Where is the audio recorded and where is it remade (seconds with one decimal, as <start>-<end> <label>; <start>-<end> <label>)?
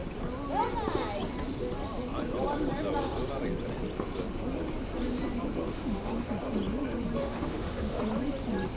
0.0-5.7 recorded; 5.7-6.3 remade; 6.3-7.2 recorded; 7.2-8.0 remade; 8.0-8.8 recorded